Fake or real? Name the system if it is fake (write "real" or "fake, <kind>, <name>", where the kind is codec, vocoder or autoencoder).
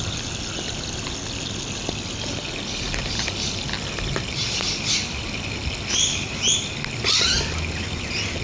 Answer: real